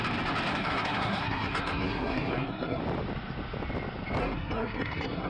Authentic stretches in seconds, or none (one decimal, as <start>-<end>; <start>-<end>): 0.0-0.5; 2.8-4.2